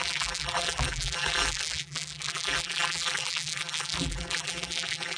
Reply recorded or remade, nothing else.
remade